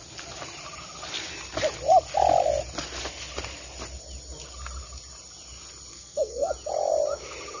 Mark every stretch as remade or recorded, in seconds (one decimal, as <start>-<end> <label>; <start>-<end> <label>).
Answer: 0.0-5.9 recorded; 5.9-6.5 remade; 6.5-7.6 recorded